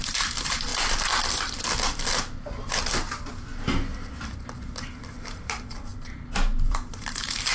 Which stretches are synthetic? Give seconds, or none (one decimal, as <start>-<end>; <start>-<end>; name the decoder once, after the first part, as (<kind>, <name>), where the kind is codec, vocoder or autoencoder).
0.0-0.7 (vocoder, BigVGAN v2); 5.2-5.9; 6.5-7.5